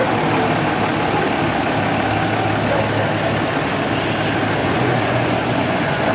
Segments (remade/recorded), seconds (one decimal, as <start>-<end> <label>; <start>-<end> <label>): 0.0-4.6 recorded; 4.6-6.1 remade